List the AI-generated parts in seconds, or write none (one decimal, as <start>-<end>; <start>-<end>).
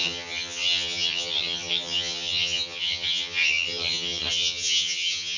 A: 0.0-5.4